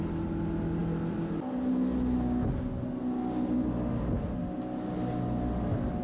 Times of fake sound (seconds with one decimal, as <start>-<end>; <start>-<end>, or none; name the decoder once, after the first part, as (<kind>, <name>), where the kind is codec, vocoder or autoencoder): none